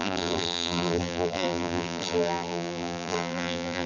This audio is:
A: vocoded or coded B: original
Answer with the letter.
A